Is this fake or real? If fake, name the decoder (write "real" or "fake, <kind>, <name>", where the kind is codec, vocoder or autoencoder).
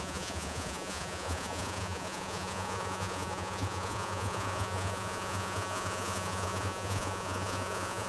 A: fake, vocoder, Vocos